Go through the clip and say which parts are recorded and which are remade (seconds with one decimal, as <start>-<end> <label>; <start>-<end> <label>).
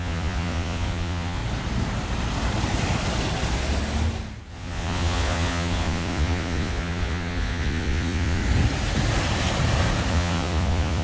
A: 0.0-1.4 remade; 1.4-4.5 recorded; 4.5-8.4 remade; 8.4-10.1 recorded; 10.1-11.0 remade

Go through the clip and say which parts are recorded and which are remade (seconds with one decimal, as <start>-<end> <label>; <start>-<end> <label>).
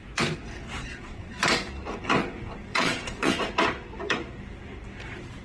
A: 0.0-0.8 recorded; 0.8-1.4 remade; 1.4-2.2 recorded; 2.2-3.5 remade; 3.5-5.4 recorded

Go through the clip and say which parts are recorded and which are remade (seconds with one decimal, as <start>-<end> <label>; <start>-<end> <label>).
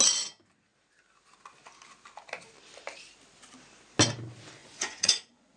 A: 0.0-4.6 recorded; 4.6-5.6 remade